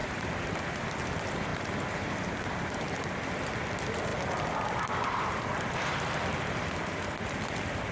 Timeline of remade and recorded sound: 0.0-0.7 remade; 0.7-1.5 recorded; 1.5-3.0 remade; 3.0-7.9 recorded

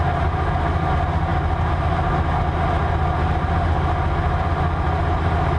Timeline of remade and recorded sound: 0.0-5.6 recorded

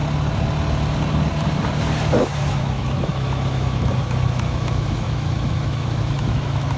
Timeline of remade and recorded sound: 0.0-2.2 recorded; 2.2-6.8 remade

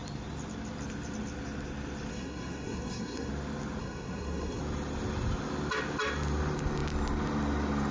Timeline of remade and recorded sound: 0.0-2.1 recorded; 2.1-3.3 remade; 3.3-3.8 recorded; 3.8-4.6 remade; 4.6-7.9 recorded

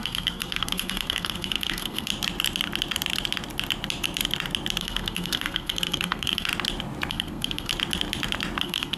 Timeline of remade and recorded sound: 0.0-2.1 remade; 2.1-4.8 recorded; 4.8-6.5 remade; 6.5-7.1 recorded; 7.1-7.7 remade; 7.7-8.6 recorded; 8.6-9.0 remade